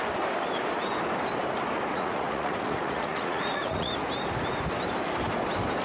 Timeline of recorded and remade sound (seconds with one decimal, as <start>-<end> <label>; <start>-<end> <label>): 0.0-1.9 recorded; 1.9-3.9 remade; 3.9-5.8 recorded